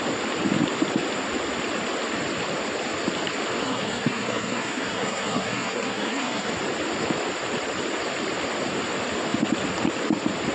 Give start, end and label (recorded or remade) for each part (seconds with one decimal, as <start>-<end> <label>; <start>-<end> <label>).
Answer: 0.0-3.6 recorded; 3.6-6.5 remade; 6.5-10.5 recorded